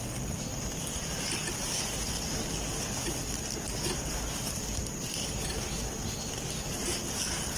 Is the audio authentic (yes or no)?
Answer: yes